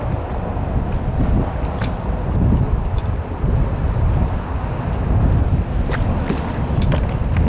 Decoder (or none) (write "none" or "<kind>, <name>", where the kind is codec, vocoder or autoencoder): none